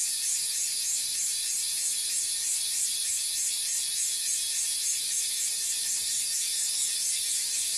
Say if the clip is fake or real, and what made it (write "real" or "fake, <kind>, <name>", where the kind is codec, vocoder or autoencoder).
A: fake, autoencoder, DAC-VAE